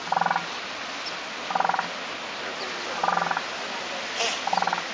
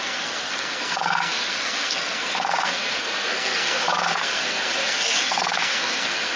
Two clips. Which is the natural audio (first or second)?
first